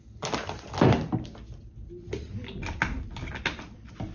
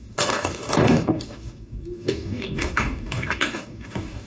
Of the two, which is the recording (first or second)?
first